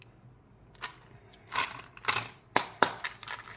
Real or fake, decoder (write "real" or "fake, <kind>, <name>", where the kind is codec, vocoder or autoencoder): real